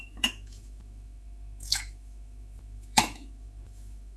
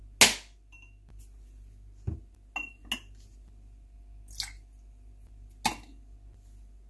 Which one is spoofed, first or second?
first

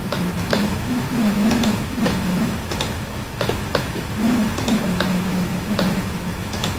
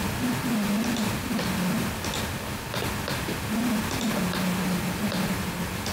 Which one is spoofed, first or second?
first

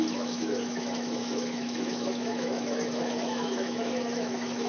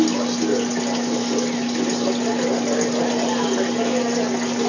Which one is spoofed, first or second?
first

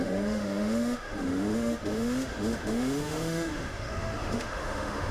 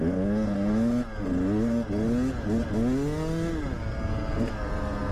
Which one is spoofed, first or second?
first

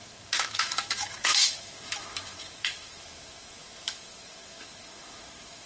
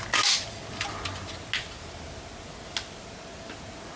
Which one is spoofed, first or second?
first